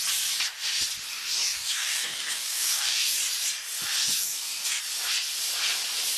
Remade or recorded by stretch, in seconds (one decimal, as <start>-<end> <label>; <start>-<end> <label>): 0.0-1.1 recorded; 1.1-3.2 remade; 3.2-4.0 recorded; 4.0-4.8 remade; 4.8-6.2 recorded